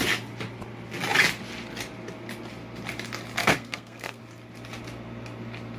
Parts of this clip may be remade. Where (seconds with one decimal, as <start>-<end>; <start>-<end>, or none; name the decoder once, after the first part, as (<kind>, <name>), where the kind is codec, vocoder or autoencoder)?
3.4-4.2 (codec, SNAC)